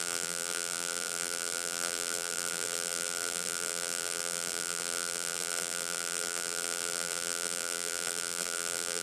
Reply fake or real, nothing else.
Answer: fake